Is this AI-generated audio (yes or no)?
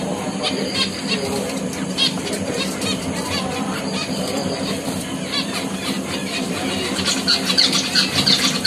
yes